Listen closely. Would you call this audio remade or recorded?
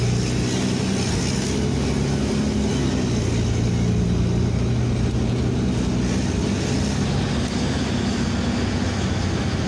recorded